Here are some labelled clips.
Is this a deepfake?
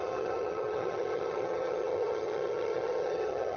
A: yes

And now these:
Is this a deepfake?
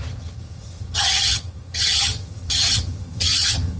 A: yes